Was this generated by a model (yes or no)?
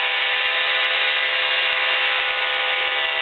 no